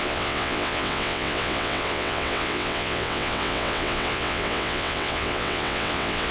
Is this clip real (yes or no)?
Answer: no